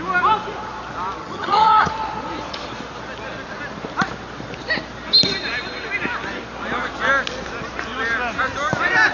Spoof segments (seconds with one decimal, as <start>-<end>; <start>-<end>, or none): 1.2-1.9